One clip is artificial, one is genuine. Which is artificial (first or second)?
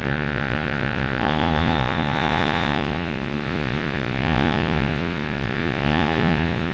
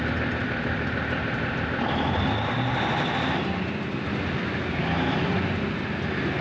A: first